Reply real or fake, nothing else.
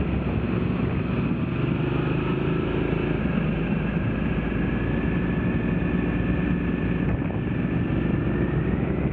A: real